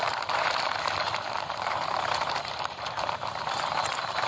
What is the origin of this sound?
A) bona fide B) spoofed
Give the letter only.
B